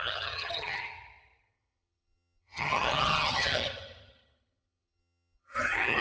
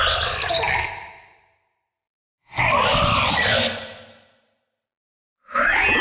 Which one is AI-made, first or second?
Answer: first